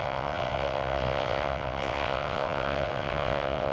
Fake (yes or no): yes